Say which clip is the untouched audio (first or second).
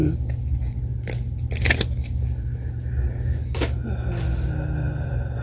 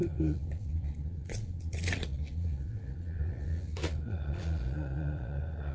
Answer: first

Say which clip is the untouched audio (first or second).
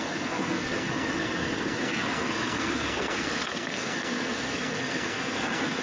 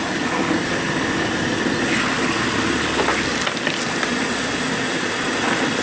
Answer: second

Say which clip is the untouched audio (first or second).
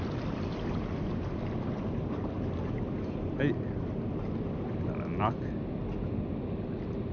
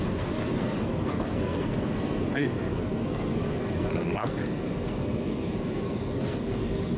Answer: first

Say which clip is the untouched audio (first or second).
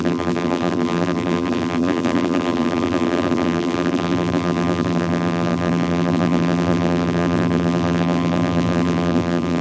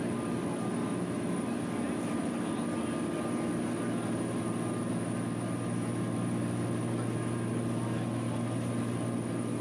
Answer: second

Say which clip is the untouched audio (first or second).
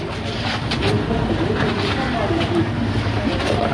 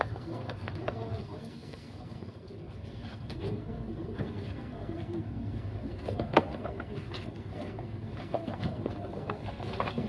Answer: first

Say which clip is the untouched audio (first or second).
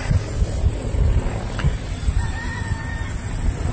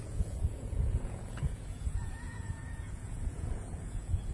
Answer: first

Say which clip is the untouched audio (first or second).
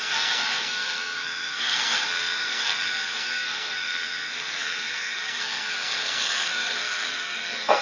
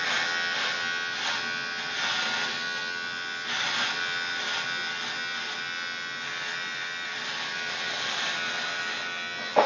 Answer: second